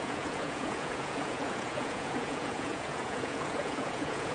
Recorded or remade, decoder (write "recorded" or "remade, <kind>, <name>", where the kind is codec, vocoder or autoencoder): remade, vocoder, Vocos